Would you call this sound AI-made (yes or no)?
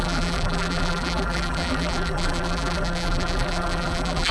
yes